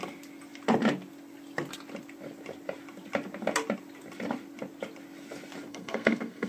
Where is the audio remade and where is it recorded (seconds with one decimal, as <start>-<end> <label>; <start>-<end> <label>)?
0.0-5.7 recorded; 5.7-6.5 remade